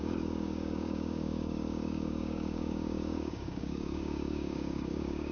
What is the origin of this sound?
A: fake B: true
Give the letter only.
A